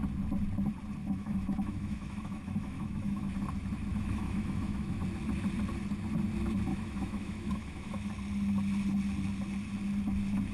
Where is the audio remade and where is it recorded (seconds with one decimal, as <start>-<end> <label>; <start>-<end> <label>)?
0.0-1.0 recorded; 1.0-3.3 remade; 3.3-3.9 recorded; 3.9-5.0 remade; 5.0-6.7 recorded; 6.7-8.1 remade; 8.1-10.5 recorded